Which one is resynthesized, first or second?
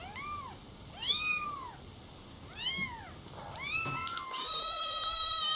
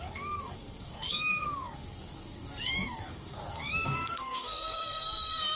second